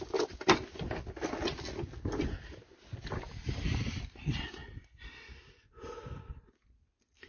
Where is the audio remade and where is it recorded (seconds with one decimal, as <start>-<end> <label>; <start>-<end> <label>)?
0.0-7.3 recorded